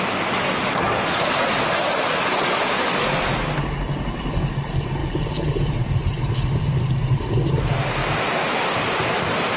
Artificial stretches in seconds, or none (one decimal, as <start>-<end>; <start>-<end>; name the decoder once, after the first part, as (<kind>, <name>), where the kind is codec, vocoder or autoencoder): 5.0-6.9 (vocoder, BigVGAN v2)